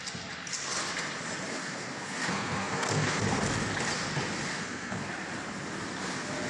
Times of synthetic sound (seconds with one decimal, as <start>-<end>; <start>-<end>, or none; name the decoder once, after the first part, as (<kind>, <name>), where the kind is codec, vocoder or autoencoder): 1.5-3.2 (codec, SNAC); 4.5-5.1